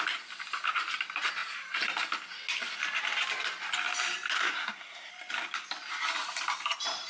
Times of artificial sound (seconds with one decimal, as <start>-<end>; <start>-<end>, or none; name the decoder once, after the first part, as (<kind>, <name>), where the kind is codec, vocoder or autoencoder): 4.4-5.1 (codec, SNAC)